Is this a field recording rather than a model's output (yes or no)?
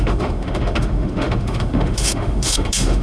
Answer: no